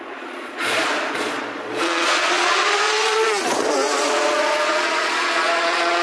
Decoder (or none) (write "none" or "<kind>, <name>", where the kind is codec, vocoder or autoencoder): vocoder, Vocos